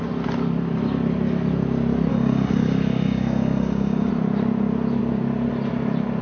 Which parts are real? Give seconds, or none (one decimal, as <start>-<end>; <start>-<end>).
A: 0.0-2.1; 4.1-6.2